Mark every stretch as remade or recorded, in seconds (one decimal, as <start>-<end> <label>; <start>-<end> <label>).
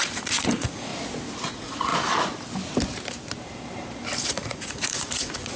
0.0-0.9 remade; 0.9-1.5 recorded; 1.5-1.9 remade; 1.9-4.2 recorded; 4.2-5.6 remade